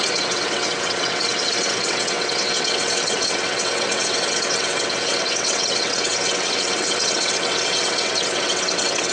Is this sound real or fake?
fake